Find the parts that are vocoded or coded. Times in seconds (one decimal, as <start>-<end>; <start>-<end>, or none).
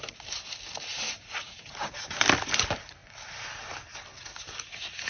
0.9-1.9